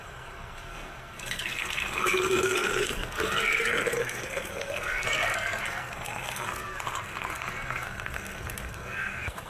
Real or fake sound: fake